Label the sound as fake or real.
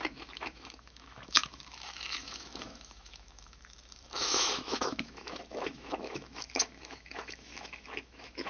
fake